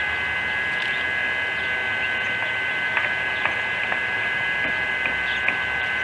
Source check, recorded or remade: recorded